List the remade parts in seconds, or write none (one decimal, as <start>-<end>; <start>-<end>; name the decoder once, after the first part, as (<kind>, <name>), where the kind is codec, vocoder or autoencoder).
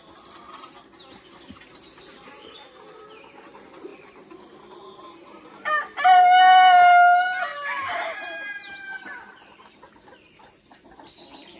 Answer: 3.9-6.0 (vocoder, BigVGAN v2); 7.5-10.4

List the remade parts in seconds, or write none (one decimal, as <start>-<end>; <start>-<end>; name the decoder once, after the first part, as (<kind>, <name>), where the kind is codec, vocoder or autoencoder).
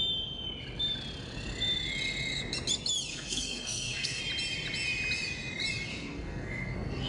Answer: 3.1-4.2 (codec, SNAC); 5.9-7.1